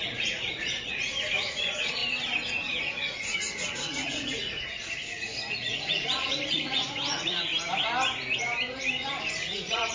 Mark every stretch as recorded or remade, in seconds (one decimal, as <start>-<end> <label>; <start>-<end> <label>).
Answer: 0.0-2.0 remade; 2.0-2.8 recorded; 2.8-7.5 remade; 7.5-9.4 recorded; 9.4-9.9 remade